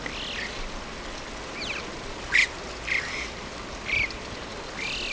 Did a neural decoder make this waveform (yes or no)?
no